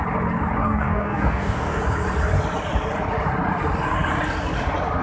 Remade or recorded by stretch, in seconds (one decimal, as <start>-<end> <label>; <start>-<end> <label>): 0.0-0.6 recorded; 0.6-1.8 remade; 1.8-5.0 recorded